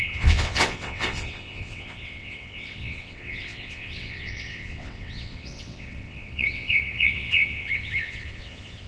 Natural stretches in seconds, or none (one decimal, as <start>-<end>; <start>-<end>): none